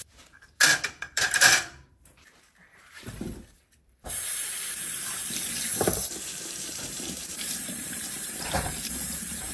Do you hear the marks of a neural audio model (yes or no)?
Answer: yes